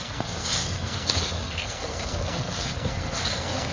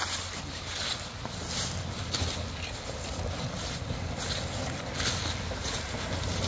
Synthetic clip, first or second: first